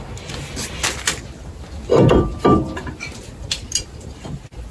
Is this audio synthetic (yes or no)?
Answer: no